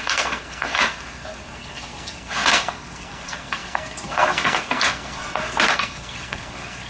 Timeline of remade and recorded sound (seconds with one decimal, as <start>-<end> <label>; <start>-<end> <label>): 0.0-6.9 remade